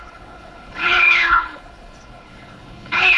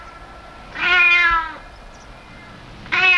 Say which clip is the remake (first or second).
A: first